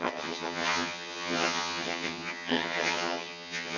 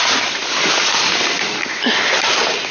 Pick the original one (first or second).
second